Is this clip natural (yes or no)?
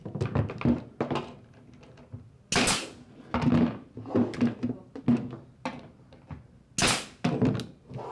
yes